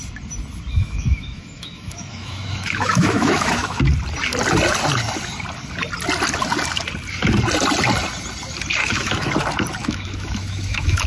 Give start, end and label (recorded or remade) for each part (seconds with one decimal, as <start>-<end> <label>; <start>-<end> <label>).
0.0-0.8 recorded; 0.8-3.8 remade; 3.8-8.8 recorded; 8.8-9.3 remade; 9.3-9.8 recorded; 9.8-11.1 remade

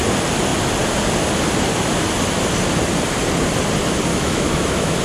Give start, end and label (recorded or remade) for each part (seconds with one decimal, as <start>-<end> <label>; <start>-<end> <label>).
0.0-4.1 recorded; 4.1-5.0 remade

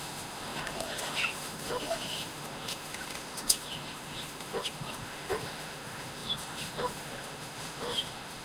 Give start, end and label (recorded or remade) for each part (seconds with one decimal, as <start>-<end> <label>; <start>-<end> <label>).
0.0-8.4 remade

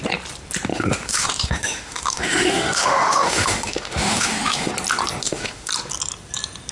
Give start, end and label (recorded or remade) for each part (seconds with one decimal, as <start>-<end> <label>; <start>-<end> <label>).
0.0-0.7 recorded; 0.7-4.7 remade; 4.7-5.2 recorded; 5.2-5.7 remade; 5.7-6.7 recorded

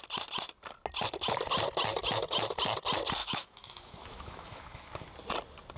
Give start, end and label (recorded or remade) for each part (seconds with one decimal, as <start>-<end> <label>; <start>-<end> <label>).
0.0-3.2 recorded; 3.2-4.9 remade; 4.9-5.8 recorded

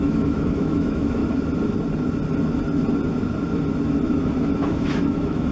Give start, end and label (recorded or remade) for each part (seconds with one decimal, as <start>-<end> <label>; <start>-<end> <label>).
0.0-1.2 remade; 1.2-4.5 recorded; 4.5-5.5 remade